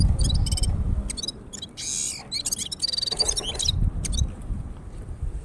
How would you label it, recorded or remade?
recorded